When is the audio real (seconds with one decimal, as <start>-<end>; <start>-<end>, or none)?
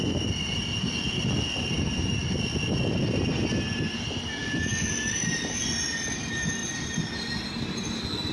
0.0-4.4; 5.6-6.6; 7.2-8.3